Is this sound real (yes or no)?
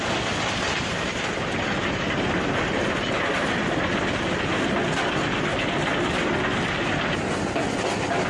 yes